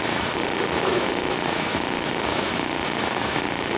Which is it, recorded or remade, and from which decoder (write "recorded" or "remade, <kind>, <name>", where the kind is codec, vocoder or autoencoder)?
remade, autoencoder, DAC-VAE